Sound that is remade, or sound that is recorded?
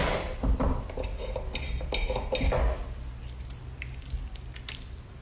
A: recorded